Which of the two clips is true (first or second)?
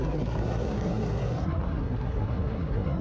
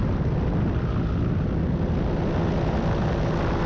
second